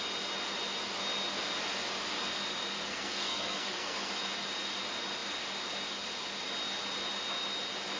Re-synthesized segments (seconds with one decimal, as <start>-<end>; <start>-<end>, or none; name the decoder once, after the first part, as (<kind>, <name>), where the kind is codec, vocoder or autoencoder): 2.9-4.1 (codec, SNAC)